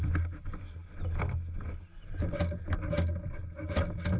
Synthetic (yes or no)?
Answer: no